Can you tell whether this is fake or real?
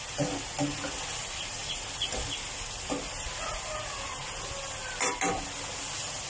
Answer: real